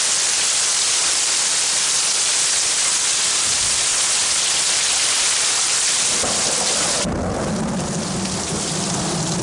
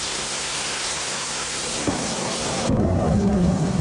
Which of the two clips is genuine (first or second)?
first